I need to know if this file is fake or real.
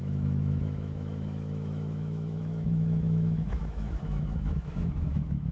fake